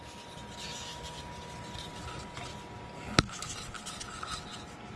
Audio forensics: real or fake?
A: real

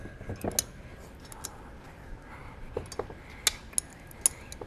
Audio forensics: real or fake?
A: real